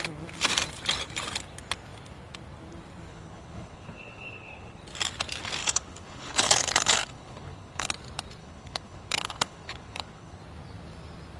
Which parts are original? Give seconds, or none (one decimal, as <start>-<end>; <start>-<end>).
0.0-3.1; 4.8-5.6; 7.9-8.4; 10.4-11.4